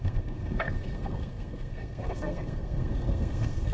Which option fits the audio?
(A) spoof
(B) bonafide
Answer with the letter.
A